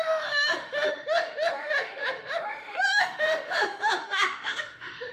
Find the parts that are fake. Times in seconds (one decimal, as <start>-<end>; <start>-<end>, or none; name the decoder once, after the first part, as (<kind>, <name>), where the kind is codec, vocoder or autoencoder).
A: 0.0-5.1 (autoencoder, DAC-VAE)